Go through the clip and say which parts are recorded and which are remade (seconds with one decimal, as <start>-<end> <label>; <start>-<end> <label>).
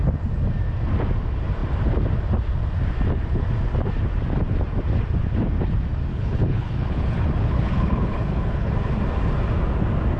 0.0-6.1 recorded; 6.1-8.7 remade; 8.7-10.2 recorded